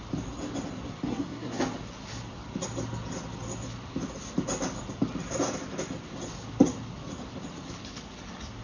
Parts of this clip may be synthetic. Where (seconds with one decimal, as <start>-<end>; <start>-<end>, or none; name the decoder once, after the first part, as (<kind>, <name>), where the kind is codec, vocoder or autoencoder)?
1.1-1.6 (codec, SNAC)